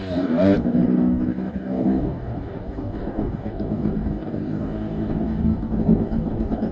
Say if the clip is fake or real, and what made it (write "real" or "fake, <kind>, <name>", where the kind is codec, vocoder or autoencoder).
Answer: fake, codec, DAC